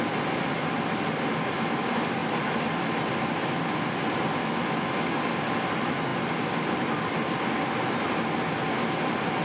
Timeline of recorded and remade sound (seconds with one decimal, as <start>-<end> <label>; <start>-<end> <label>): 0.0-4.4 recorded; 4.4-5.1 remade; 5.1-9.4 recorded